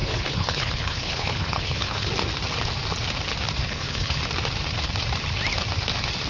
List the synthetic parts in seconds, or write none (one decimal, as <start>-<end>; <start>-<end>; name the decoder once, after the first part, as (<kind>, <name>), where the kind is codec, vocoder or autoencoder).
0.0-2.1 (codec, HILCodec); 3.6-4.2